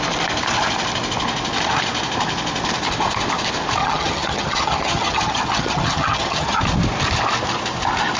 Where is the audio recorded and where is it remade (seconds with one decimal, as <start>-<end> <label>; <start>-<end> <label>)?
0.0-3.8 recorded; 3.8-6.6 remade; 6.6-8.2 recorded